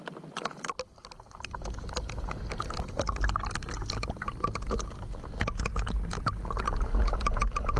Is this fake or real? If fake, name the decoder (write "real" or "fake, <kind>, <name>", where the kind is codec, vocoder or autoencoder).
real